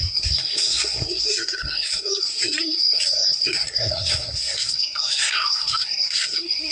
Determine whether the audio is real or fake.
fake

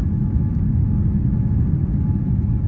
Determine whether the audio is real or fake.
real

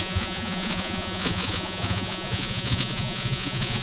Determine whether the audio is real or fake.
fake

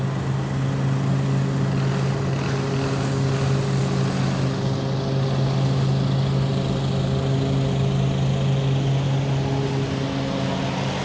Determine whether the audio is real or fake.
real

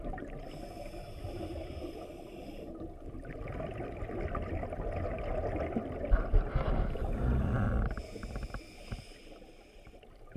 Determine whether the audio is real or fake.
real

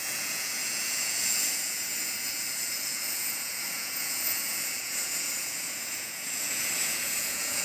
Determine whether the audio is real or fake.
fake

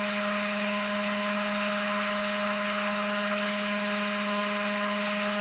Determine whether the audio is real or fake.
fake